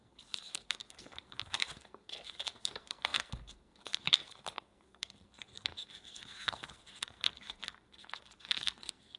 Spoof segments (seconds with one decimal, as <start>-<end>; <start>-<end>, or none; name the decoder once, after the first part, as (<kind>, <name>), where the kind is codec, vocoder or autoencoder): 0.0-9.2 (codec, SNAC)